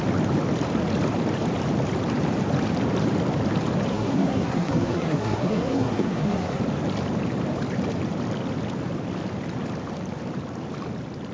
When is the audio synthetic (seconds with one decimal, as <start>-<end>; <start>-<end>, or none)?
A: 3.9-6.6